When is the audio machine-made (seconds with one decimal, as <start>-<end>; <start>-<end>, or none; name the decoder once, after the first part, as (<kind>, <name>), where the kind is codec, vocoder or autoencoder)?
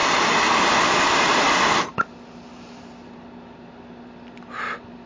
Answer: none